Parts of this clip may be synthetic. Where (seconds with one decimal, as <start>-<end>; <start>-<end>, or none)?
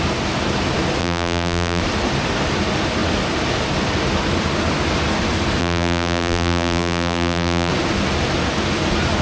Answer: 1.0-1.8; 5.6-7.7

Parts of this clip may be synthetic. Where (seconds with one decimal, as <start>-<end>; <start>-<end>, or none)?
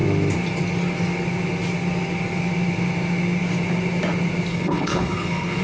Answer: 4.5-5.6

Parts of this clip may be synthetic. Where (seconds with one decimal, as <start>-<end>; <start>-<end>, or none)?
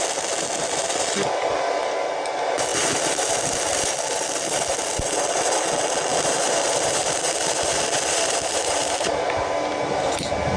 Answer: 2.7-3.9; 6.1-10.2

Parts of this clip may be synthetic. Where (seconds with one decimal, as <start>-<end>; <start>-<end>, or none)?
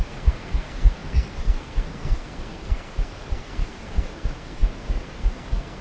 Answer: 0.0-5.8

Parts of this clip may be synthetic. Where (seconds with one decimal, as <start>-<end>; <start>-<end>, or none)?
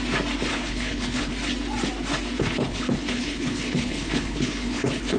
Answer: 0.5-1.3; 2.4-5.2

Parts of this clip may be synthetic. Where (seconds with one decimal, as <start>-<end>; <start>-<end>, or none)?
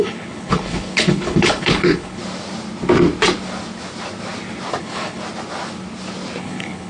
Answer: 0.0-2.2; 4.8-5.2; 6.4-6.9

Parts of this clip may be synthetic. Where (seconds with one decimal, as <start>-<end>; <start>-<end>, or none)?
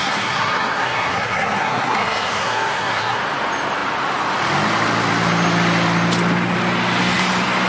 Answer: 0.0-3.2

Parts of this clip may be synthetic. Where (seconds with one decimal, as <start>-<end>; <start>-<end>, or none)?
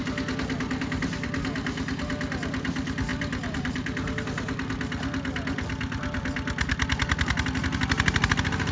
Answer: 3.1-4.2